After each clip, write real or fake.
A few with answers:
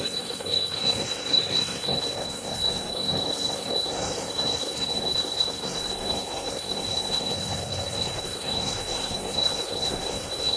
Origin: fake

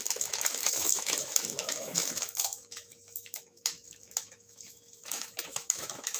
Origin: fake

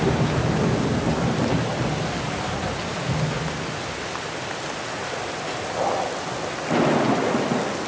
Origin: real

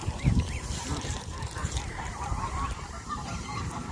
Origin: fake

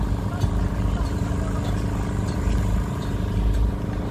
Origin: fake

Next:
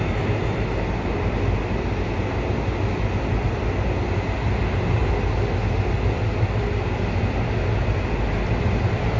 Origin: real